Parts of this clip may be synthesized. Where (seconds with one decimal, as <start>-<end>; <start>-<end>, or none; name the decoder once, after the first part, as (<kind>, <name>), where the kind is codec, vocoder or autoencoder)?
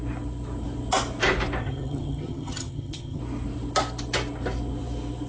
1.6-3.2 (vocoder, HiFi-GAN)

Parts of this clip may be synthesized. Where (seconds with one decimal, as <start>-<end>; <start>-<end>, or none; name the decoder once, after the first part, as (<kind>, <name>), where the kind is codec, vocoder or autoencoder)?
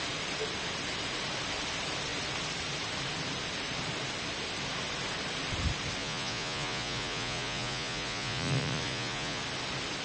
6.0-9.4 (vocoder, Vocos)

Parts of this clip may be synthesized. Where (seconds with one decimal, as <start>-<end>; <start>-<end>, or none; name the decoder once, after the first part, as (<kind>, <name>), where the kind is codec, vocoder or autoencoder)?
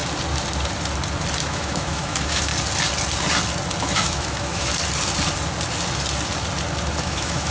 1.4-2.5 (autoencoder, DAC-VAE); 3.8-4.7; 7.0-7.5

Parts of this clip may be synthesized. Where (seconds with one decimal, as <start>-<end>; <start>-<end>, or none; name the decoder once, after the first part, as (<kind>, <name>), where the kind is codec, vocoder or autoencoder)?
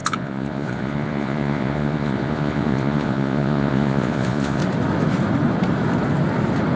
0.0-4.6 (vocoder, Vocos)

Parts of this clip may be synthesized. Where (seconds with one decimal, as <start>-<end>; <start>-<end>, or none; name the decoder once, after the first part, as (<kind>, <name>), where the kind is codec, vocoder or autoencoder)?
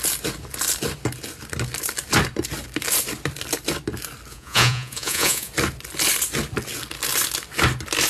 4.3-5.5 (vocoder, Vocos)